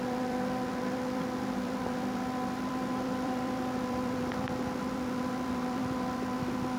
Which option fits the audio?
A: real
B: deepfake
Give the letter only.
B